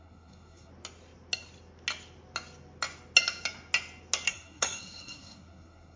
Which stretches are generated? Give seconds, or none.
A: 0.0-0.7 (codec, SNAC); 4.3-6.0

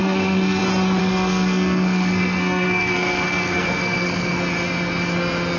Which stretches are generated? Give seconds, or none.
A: 0.0-0.6 (codec, SNAC); 1.0-4.4

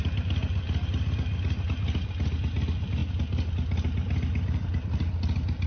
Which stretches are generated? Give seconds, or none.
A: none

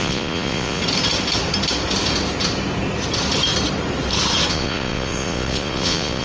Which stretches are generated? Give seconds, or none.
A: 0.0-0.8 (vocoder, Vocos); 4.5-6.2

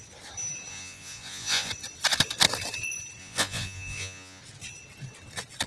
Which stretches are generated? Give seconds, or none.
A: 0.7-1.7 (vocoder, Vocos); 3.2-4.4

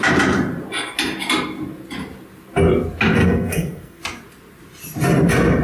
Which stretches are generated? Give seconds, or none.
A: 3.2-4.0 (codec, SNAC)

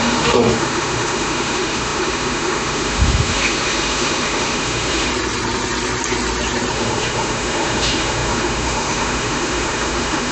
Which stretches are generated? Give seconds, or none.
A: 0.0-5.1 (autoencoder, DAC-VAE); 6.7-10.3